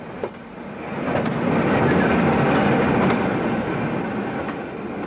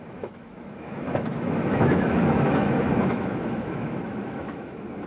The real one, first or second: first